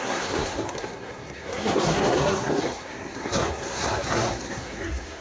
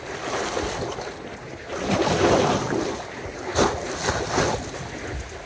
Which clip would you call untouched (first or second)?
second